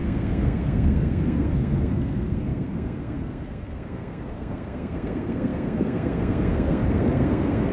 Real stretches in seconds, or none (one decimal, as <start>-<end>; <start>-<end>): none